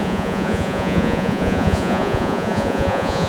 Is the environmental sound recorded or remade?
remade